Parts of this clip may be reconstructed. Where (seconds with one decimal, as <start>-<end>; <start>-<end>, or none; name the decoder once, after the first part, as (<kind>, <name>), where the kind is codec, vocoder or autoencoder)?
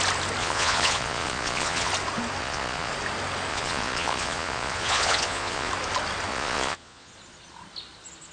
0.4-1.9 (vocoder, Vocos); 2.4-2.9; 3.5-5.7; 6.3-7.1